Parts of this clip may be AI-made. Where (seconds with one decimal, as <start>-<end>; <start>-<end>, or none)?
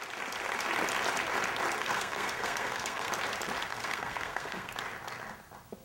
1.8-3.1; 3.7-4.7